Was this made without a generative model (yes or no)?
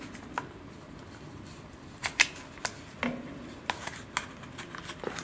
yes